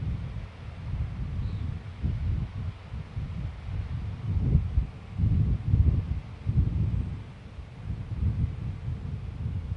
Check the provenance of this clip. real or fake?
real